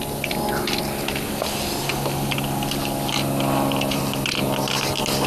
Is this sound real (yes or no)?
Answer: yes